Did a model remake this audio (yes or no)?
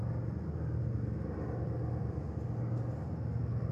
no